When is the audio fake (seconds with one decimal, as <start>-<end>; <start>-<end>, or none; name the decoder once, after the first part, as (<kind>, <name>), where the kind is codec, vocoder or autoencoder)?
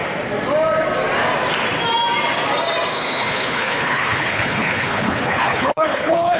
2.9-6.4 (codec, HILCodec)